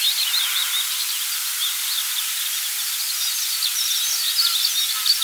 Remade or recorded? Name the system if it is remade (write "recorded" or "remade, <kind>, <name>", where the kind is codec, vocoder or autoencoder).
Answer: recorded